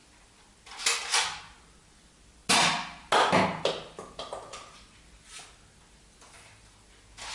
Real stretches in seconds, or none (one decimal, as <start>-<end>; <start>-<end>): 0.0-7.3